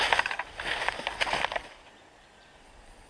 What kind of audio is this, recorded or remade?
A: recorded